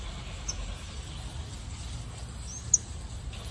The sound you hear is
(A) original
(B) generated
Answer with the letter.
A